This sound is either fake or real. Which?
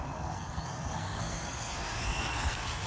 fake